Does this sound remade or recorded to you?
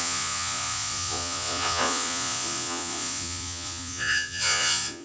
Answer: remade